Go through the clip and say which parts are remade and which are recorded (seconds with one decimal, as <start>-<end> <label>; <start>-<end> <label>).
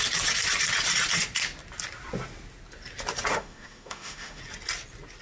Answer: 0.0-3.3 recorded; 3.3-4.4 remade; 4.4-5.2 recorded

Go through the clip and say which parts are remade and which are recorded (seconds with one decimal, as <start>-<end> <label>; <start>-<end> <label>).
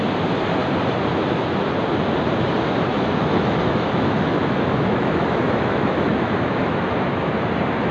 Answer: 0.0-2.9 recorded; 2.9-7.1 remade; 7.1-7.9 recorded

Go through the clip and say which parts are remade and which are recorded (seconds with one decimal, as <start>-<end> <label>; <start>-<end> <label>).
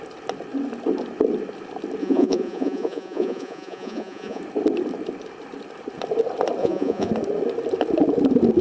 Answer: 0.0-2.0 recorded; 2.0-4.4 remade; 4.4-6.6 recorded; 6.6-7.1 remade; 7.1-8.6 recorded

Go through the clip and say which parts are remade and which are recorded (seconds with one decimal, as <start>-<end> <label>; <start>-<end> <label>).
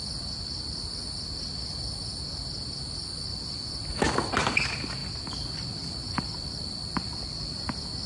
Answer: 0.0-5.0 recorded; 5.0-7.6 remade; 7.6-8.1 recorded